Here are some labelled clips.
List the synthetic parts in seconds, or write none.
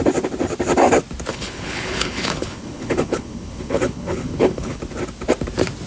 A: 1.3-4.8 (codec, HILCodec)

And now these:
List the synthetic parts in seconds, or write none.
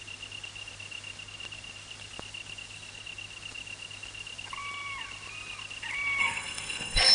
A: 6.2-7.1 (codec, SNAC)